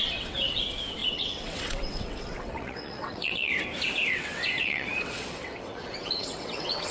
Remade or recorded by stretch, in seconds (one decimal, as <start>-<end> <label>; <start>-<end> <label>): 0.0-3.5 remade; 3.5-4.1 recorded; 4.1-6.9 remade